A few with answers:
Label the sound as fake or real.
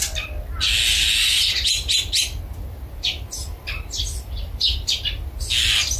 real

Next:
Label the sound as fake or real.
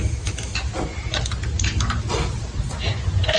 real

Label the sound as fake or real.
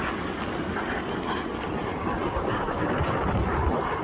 real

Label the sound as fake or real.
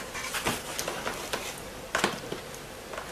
real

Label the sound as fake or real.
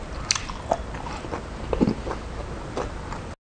real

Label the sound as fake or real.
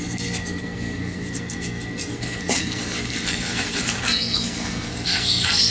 fake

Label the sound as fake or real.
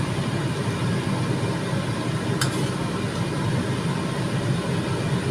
real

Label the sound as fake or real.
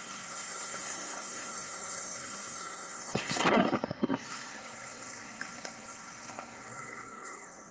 fake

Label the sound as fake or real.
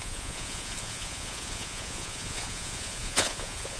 fake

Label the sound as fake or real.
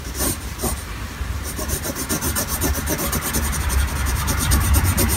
real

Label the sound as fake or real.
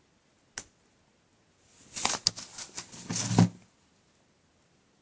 real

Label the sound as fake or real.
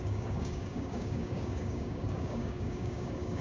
fake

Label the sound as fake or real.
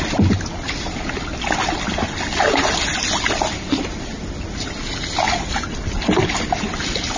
real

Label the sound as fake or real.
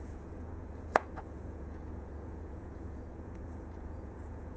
fake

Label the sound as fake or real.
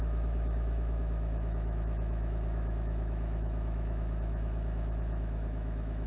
fake